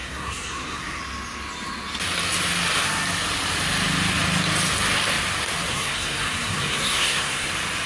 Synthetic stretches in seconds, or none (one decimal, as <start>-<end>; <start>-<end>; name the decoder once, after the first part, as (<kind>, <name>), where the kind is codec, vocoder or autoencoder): 0.0-1.0 (codec, SNAC); 5.7-7.5